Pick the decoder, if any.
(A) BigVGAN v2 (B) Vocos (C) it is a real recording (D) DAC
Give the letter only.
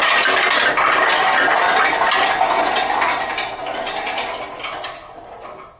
C